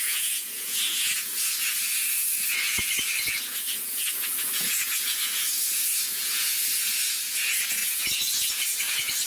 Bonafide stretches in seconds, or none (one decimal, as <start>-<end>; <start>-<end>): none